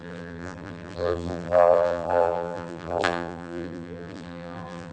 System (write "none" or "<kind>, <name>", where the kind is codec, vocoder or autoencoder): vocoder, BigVGAN v2